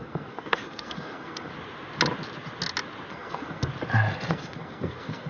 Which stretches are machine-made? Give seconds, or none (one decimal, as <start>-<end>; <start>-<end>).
0.0-1.5; 3.1-3.7; 4.3-5.3